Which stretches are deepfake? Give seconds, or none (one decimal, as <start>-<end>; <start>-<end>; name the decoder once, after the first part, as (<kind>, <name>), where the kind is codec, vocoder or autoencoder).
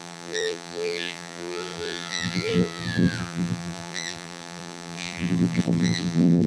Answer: 0.0-6.5 (vocoder, BigVGAN v2)